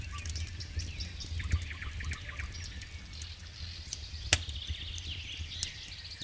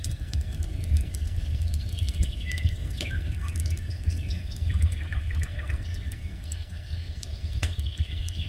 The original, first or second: first